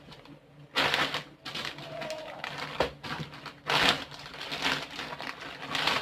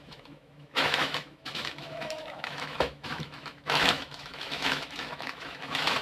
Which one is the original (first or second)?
first